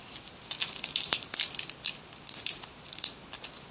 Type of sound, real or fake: real